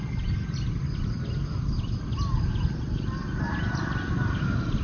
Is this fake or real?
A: real